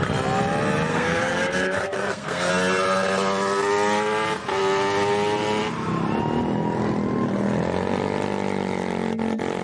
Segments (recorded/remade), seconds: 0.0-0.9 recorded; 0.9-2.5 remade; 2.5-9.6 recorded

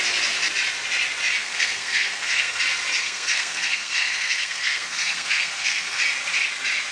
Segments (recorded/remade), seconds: 0.0-1.4 recorded; 1.4-2.6 remade; 2.6-3.0 recorded; 3.0-6.0 remade; 6.0-6.9 recorded

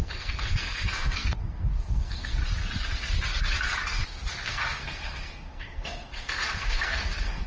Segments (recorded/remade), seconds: 0.0-2.4 remade; 2.4-4.3 recorded; 4.3-7.5 remade